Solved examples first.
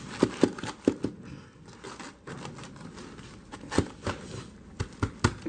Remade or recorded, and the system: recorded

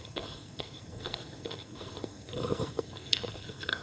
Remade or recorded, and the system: remade, codec, SNAC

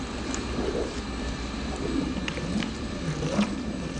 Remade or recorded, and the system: recorded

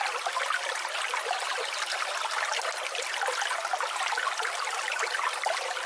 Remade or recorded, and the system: recorded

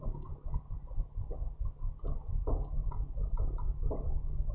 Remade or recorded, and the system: recorded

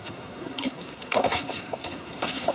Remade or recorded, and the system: remade, codec, SNAC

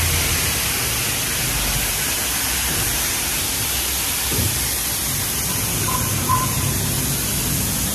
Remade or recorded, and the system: recorded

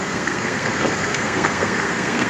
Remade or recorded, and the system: remade, codec, SNAC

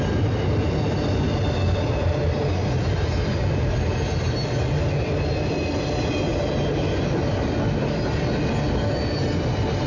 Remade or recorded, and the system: recorded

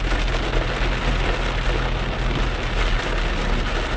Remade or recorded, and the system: recorded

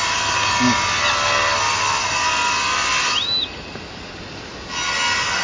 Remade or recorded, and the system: recorded